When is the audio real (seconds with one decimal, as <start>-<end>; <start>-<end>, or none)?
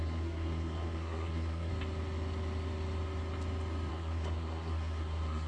1.7-3.9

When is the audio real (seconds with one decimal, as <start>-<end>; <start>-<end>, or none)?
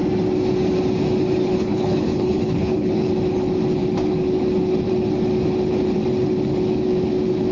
0.0-1.4; 3.1-7.5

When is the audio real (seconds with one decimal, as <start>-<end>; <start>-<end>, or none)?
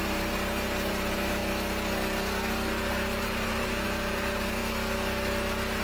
1.4-2.9; 4.6-5.8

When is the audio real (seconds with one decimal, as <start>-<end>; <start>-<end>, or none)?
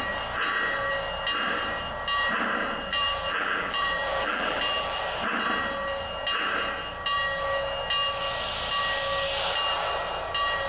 0.0-2.9; 5.0-10.7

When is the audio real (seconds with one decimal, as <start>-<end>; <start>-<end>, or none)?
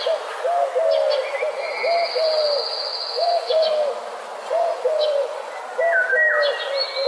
0.0-2.9; 3.7-4.4; 5.6-7.1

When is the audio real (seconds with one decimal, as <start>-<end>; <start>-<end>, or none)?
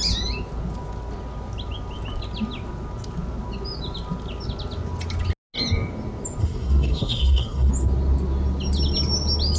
0.0-6.4; 7.7-9.6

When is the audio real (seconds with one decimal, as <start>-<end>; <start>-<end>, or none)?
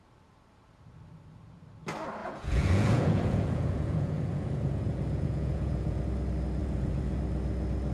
0.0-2.2; 6.0-6.6; 7.2-7.9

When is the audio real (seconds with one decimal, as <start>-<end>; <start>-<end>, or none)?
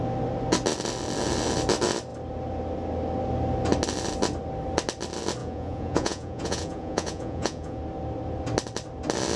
0.0-5.4; 7.8-9.4